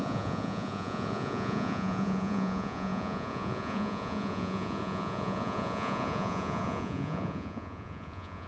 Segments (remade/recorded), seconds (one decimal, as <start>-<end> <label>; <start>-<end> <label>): 0.0-8.5 remade